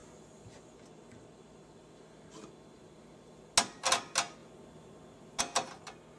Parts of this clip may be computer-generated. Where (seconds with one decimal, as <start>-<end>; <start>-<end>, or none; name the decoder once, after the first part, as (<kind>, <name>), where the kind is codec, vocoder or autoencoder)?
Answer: none